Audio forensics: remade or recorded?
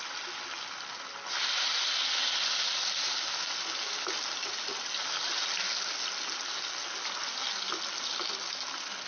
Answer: recorded